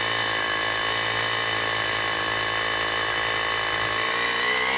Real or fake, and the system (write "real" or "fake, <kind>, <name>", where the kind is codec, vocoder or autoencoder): real